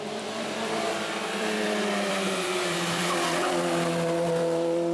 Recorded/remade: remade